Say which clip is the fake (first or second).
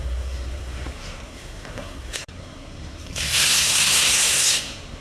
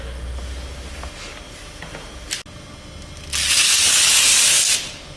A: first